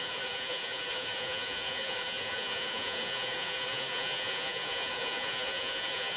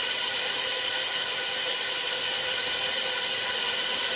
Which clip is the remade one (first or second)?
first